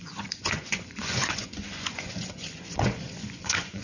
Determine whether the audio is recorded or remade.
remade